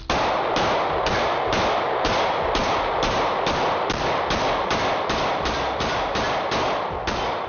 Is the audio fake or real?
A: real